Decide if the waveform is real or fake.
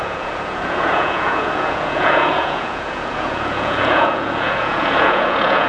fake